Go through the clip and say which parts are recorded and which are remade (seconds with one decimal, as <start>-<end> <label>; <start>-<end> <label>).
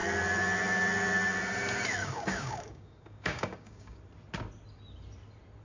0.0-2.0 recorded; 2.0-4.0 remade; 4.0-5.6 recorded